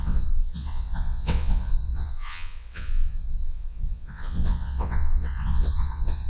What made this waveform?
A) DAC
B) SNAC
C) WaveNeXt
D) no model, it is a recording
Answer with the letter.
C